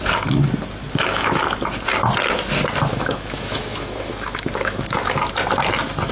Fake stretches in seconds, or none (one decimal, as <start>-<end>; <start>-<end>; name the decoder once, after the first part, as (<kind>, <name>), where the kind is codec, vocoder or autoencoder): 0.8-1.4 (autoencoder, DAC-VAE); 2.9-5.2